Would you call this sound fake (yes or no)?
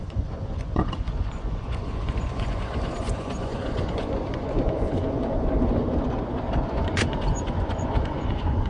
yes